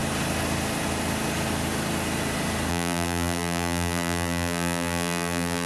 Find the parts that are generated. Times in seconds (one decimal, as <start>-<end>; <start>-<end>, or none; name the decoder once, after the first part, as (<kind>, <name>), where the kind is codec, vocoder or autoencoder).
2.7-5.7 (vocoder, BigVGAN v2)